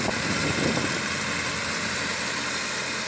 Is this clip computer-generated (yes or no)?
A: no